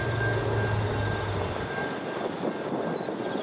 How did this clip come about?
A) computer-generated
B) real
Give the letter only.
B